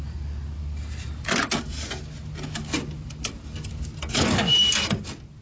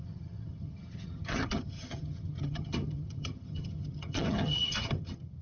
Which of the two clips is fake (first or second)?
second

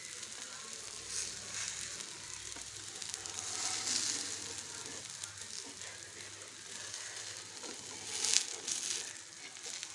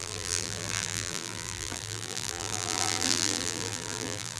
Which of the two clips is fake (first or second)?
second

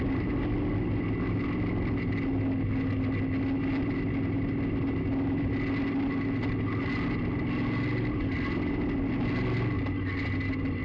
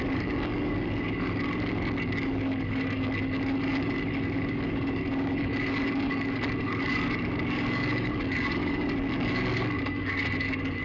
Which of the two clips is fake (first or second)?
second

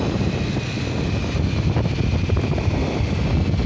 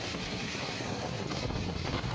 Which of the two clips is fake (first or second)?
second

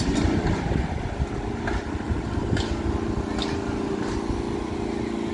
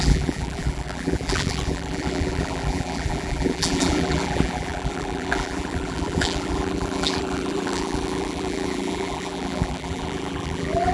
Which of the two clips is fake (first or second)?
second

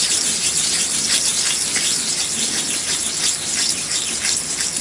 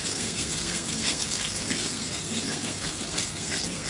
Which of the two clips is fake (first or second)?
second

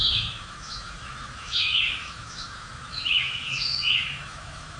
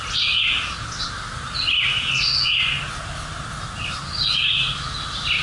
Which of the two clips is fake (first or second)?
first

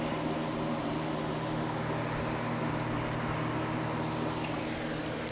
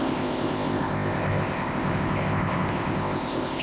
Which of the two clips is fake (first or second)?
second